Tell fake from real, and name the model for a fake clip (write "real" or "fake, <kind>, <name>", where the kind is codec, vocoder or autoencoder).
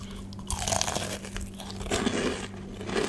real